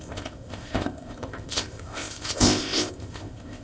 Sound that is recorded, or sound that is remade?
remade